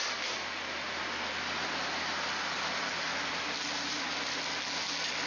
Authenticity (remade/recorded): recorded